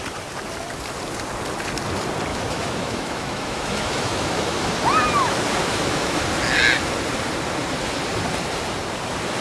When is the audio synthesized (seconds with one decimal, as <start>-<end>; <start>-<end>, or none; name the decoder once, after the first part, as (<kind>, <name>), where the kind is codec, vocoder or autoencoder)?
2.3-4.7 (autoencoder, DAC-VAE); 5.6-6.2

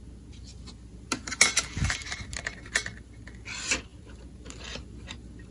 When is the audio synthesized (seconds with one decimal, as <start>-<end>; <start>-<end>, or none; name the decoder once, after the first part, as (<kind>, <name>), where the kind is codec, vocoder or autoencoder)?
none

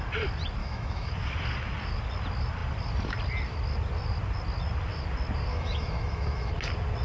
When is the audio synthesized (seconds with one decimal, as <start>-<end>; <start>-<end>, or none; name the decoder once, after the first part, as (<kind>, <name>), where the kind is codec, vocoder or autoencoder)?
0.6-1.1 (autoencoder, DAC-VAE); 5.5-6.5

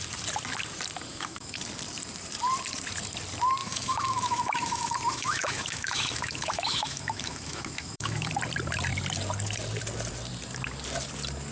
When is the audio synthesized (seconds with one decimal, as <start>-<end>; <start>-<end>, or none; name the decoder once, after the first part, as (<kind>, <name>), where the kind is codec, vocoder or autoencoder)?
1.1-1.6 (autoencoder, DAC-VAE); 3.6-8.3

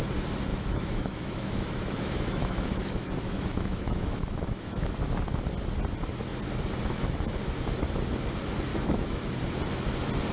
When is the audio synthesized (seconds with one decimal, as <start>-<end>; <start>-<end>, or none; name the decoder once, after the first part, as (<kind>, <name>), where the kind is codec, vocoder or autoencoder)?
0.5-4.9 (autoencoder, DAC-VAE); 8.7-9.3

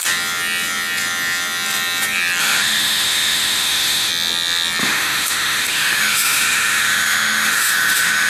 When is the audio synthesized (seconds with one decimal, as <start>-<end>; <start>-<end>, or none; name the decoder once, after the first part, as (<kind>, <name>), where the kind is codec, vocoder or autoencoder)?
2.4-4.1 (autoencoder, DAC-VAE); 4.8-8.3

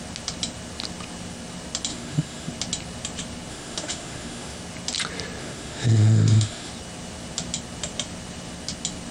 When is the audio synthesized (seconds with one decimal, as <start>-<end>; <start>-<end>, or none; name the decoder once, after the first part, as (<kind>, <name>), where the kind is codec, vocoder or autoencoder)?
1.9-2.5 (autoencoder, DAC-VAE); 3.5-4.6; 5.4-6.7